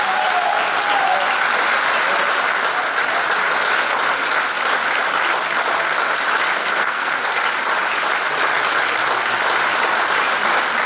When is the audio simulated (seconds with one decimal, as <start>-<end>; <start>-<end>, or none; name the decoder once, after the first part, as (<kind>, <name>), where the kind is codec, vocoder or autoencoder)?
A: 6.6-7.1 (codec, SNAC)